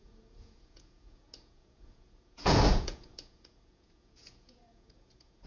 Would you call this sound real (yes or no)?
no